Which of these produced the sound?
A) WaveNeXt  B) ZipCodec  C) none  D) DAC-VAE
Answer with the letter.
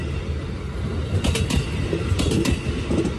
C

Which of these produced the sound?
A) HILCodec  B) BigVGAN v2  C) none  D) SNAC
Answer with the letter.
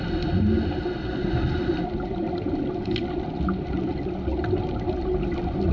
C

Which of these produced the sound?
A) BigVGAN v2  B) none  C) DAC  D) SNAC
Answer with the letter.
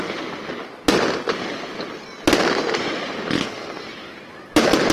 B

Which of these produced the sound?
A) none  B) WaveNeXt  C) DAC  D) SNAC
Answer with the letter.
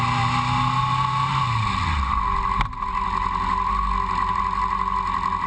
A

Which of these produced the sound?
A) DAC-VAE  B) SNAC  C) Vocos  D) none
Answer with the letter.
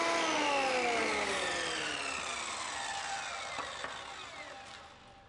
D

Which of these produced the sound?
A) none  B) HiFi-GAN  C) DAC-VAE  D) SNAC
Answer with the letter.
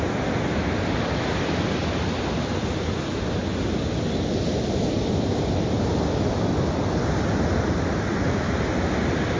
A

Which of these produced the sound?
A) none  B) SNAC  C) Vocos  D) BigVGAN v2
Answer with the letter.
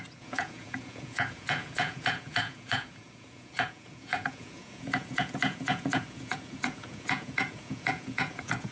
C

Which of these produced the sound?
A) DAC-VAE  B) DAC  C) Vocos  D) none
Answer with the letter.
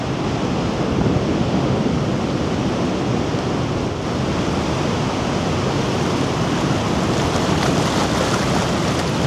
D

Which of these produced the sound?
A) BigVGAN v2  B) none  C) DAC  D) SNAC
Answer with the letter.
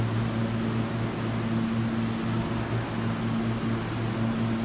B